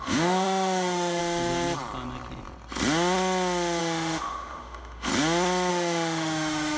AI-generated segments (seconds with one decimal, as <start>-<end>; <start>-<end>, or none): 0.0-1.2; 3.8-5.1; 5.7-6.8